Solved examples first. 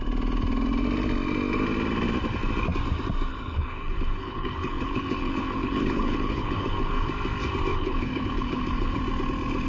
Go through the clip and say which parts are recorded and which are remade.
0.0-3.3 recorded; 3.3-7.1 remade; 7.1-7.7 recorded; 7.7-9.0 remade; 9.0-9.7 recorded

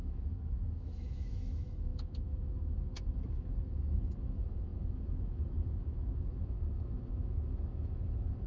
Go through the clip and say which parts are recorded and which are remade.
0.0-8.5 remade

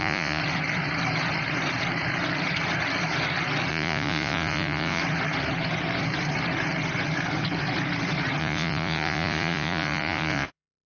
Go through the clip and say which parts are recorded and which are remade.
0.0-0.4 remade; 0.4-3.7 recorded; 3.7-5.0 remade; 5.0-8.4 recorded; 8.4-10.9 remade

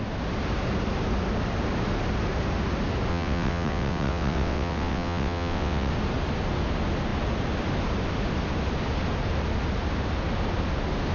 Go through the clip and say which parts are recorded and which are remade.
0.0-3.1 recorded; 3.1-5.9 remade; 5.9-11.1 recorded